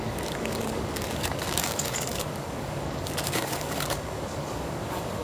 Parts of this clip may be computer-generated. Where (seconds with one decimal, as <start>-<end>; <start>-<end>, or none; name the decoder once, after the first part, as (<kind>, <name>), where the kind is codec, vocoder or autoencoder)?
0.0-5.2 (codec, DAC)

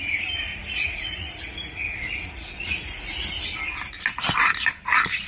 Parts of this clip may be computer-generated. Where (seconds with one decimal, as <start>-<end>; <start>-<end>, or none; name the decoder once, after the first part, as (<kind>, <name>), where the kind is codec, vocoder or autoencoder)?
0.5-3.3 (vocoder, Vocos)

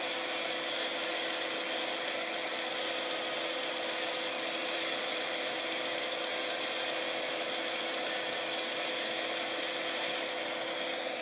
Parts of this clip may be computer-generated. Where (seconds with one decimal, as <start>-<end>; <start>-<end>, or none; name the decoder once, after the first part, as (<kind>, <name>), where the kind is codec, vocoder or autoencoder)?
4.6-5.6 (vocoder, BigVGAN v2)